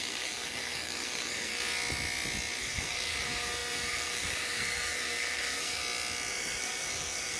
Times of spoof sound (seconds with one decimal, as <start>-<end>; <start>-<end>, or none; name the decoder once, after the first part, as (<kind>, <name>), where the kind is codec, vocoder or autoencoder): 0.0-1.5 (codec, SNAC); 2.6-5.8; 6.3-7.4